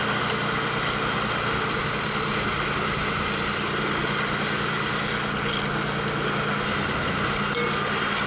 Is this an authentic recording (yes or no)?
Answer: yes